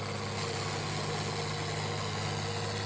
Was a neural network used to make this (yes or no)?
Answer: no